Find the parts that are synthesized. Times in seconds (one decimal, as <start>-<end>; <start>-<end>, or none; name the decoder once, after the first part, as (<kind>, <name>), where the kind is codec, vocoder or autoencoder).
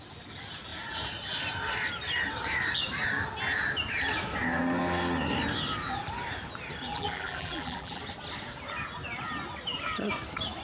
6.9-8.0 (vocoder, BigVGAN v2)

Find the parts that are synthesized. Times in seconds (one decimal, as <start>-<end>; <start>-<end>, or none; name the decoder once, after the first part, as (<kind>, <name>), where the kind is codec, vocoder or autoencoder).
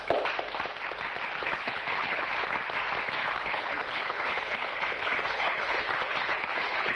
1.4-2.3 (codec, HILCodec); 3.2-7.0